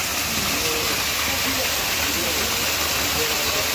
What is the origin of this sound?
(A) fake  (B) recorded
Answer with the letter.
B